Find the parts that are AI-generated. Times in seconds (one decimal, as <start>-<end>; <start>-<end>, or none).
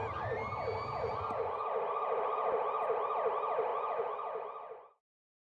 3.7-5.5